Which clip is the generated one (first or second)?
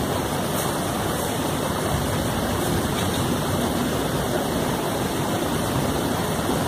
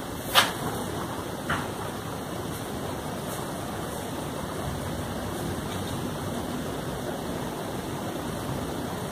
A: first